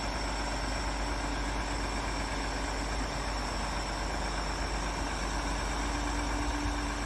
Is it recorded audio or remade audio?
recorded